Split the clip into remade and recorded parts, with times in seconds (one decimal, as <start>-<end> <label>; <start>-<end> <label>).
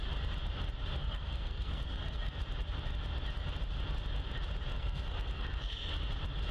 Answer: 0.0-1.0 recorded; 1.0-2.4 remade; 2.4-4.7 recorded; 4.7-5.9 remade; 5.9-6.5 recorded